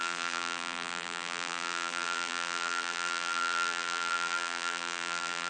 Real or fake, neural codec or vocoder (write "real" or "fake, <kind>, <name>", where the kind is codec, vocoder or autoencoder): fake, vocoder, BigVGAN v2